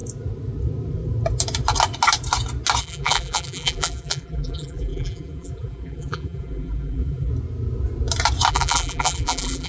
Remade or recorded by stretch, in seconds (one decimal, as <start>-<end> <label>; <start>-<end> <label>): 0.0-2.8 recorded; 2.8-7.3 remade; 7.3-8.5 recorded; 8.5-9.7 remade